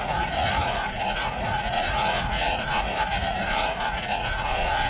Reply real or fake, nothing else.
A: fake